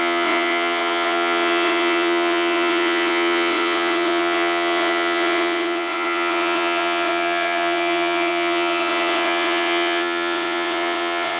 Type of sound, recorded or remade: remade